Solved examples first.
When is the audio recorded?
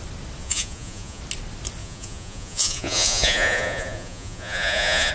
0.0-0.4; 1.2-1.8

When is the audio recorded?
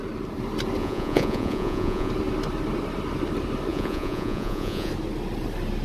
0.0-0.8; 2.1-3.7; 4.9-5.8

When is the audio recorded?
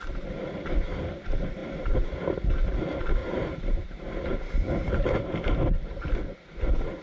0.0-3.2; 6.0-7.0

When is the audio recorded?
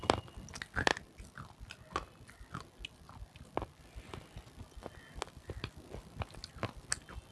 0.0-7.3